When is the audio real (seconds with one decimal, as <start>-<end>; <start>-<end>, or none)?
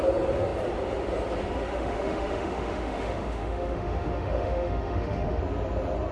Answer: 0.0-1.7; 5.4-6.1